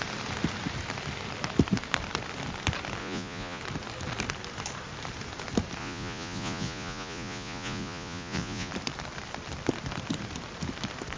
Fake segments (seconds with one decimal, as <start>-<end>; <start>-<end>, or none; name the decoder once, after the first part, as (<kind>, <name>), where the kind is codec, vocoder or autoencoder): 3.0-3.6 (vocoder, Vocos); 5.8-8.7